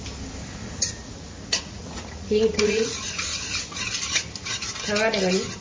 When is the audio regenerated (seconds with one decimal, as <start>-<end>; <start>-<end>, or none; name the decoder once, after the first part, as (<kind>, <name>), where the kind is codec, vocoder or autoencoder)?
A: 0.4-3.8 (vocoder, Vocos)